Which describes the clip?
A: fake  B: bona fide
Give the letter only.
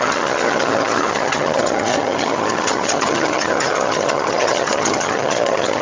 A